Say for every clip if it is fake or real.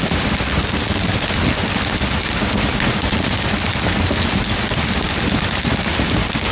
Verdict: real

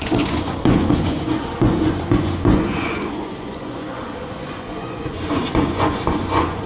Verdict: fake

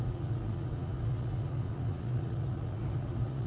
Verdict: fake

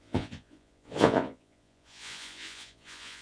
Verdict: fake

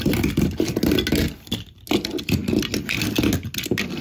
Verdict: real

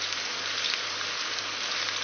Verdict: real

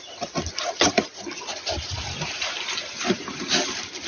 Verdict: real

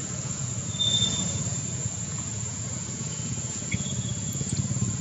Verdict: fake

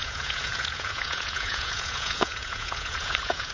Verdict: fake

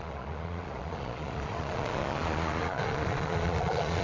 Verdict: fake